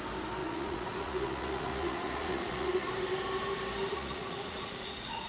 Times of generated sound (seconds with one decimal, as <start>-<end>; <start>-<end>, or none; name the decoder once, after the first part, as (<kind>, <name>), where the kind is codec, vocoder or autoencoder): 0.4-2.9 (vocoder, Vocos); 3.9-5.3